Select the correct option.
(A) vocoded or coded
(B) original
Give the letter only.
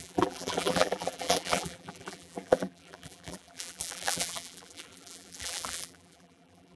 A